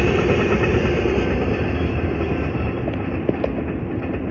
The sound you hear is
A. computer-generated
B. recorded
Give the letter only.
B